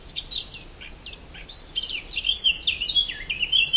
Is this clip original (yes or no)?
yes